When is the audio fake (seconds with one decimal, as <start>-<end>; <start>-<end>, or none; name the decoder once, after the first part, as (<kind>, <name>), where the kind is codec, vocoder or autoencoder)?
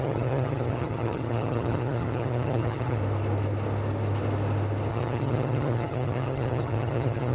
0.0-3.0 (vocoder, HiFi-GAN); 4.9-7.3